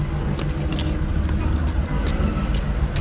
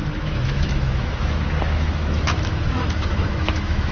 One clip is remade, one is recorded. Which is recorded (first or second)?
first